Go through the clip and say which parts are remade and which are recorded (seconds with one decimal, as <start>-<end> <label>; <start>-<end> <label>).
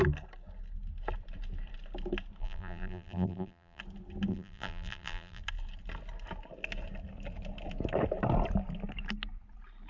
0.0-2.4 recorded; 2.4-3.8 remade; 3.8-4.3 recorded; 4.3-5.4 remade; 5.4-9.9 recorded